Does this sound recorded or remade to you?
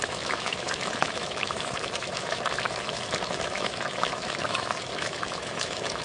remade